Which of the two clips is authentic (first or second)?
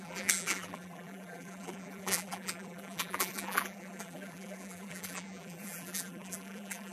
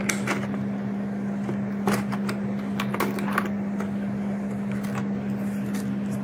second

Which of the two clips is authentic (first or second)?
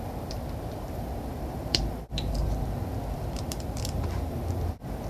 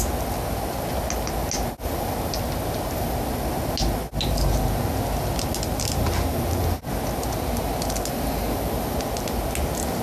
second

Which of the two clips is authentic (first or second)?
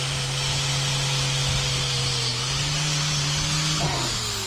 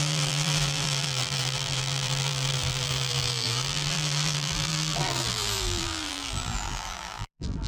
first